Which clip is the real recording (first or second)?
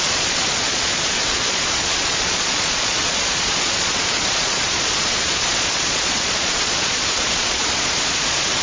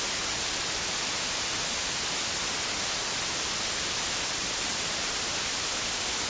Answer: second